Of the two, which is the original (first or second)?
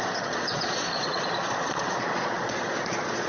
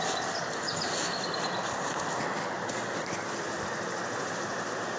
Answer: second